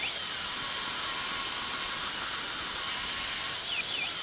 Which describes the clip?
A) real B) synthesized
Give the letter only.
A